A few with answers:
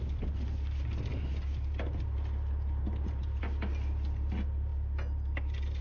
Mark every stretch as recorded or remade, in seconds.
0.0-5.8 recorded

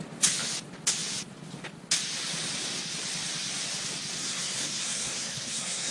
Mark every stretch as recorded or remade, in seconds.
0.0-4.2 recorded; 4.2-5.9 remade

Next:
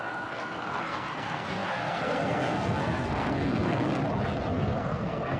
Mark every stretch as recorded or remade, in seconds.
0.0-4.0 remade; 4.0-4.5 recorded; 4.5-5.4 remade